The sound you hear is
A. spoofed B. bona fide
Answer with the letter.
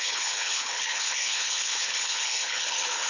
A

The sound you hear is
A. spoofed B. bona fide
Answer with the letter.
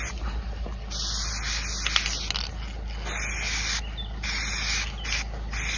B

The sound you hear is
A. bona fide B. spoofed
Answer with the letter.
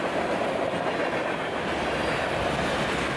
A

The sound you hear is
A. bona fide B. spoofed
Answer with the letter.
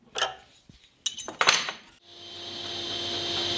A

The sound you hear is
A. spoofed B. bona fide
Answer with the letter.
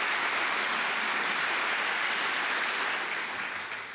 B